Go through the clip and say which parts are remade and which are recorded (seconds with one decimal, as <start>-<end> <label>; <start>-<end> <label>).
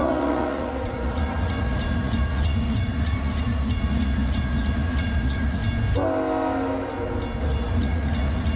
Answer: 0.0-5.6 remade; 5.6-7.4 recorded; 7.4-8.6 remade